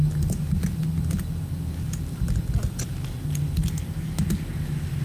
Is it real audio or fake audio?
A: real